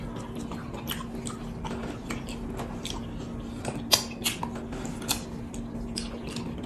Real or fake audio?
real